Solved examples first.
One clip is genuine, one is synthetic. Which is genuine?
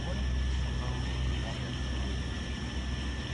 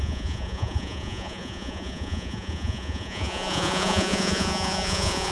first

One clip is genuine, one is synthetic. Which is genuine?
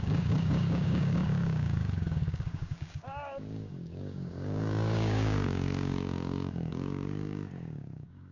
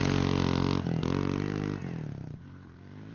second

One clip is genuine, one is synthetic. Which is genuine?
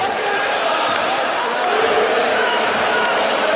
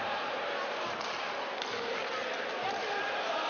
second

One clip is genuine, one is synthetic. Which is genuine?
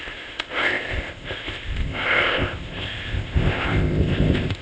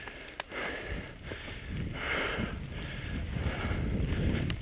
second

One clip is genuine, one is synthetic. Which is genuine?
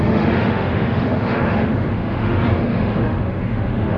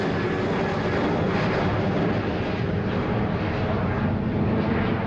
second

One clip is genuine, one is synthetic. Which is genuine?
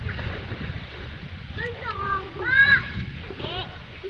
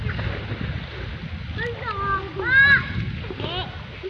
second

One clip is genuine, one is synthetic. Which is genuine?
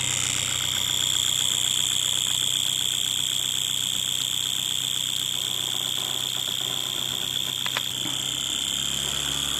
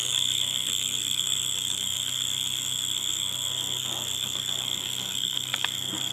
first